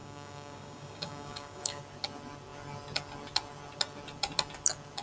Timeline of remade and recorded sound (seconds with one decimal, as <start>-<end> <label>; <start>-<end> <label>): 0.0-1.8 remade; 1.8-5.0 recorded